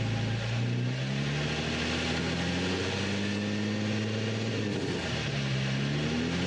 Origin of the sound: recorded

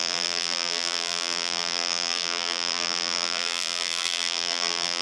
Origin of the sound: remade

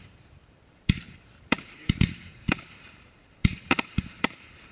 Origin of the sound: remade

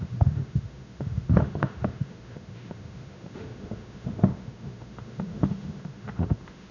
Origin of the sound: remade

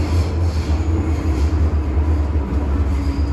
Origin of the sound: recorded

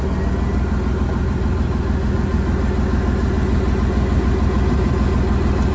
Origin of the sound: recorded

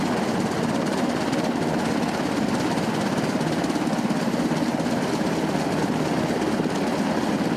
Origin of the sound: recorded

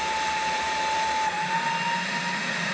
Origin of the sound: remade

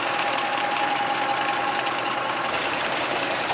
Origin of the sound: remade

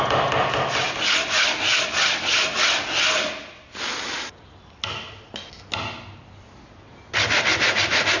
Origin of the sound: recorded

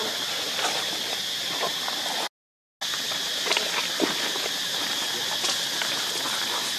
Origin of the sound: recorded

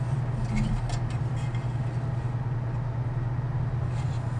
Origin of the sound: recorded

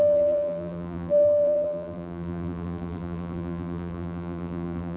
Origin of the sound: remade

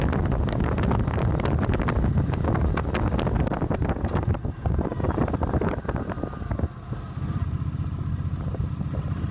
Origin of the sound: recorded